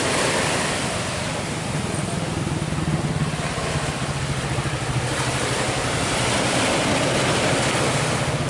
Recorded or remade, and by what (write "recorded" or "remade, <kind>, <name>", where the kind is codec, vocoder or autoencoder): recorded